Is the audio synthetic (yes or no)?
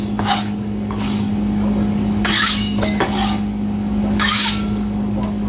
yes